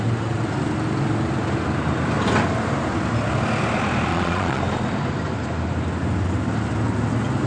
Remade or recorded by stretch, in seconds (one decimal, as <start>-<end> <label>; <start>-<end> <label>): 0.0-4.1 recorded; 4.1-4.6 remade; 4.6-7.5 recorded